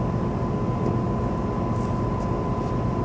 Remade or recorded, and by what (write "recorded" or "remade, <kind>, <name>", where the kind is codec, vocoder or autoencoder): recorded